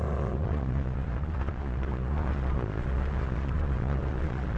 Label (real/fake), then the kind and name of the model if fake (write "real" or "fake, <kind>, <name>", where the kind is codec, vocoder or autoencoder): fake, vocoder, Vocos